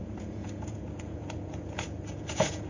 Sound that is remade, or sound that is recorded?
remade